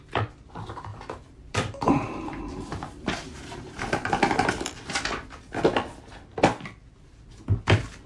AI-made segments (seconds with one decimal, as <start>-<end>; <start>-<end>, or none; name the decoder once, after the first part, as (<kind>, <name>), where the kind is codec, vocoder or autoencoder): 0.9-4.5 (vocoder, BigVGAN v2)